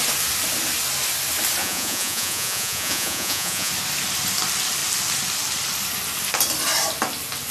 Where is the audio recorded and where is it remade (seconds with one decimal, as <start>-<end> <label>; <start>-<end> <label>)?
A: 0.0-1.6 recorded; 1.6-3.7 remade; 3.7-7.5 recorded